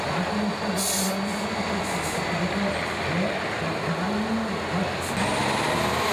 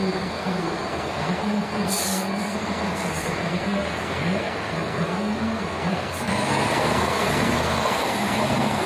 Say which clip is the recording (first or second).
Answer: first